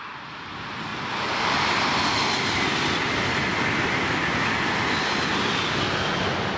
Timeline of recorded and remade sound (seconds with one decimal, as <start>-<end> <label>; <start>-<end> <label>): 0.0-6.6 recorded